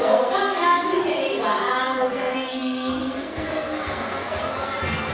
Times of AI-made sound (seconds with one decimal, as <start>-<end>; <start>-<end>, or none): 0.0-1.0; 1.8-5.1